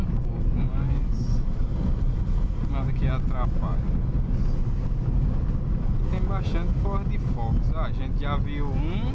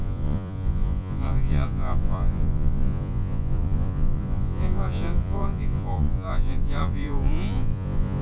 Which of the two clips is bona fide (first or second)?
first